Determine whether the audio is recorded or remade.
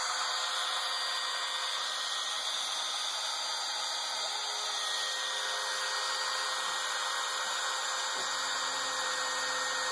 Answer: recorded